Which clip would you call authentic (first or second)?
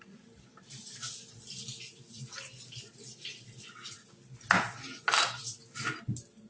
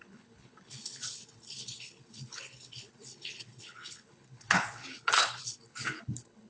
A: first